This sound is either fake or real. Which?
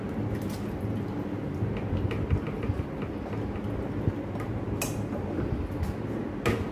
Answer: real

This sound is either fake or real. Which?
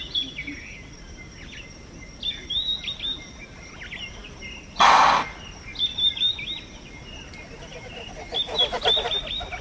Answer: real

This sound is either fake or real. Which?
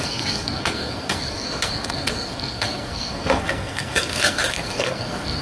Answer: fake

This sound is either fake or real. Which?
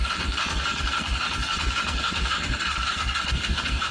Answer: fake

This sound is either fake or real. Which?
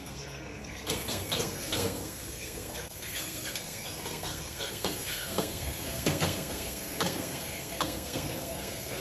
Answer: fake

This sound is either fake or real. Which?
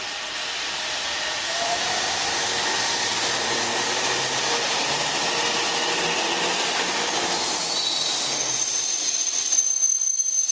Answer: real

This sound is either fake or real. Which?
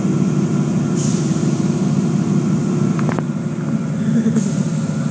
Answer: real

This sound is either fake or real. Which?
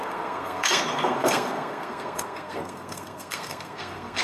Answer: fake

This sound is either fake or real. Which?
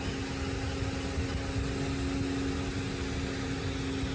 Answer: real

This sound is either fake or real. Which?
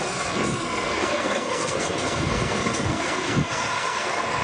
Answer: fake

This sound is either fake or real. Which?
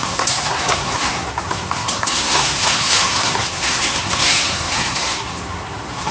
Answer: fake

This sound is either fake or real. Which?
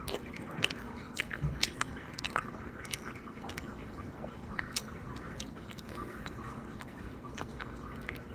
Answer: fake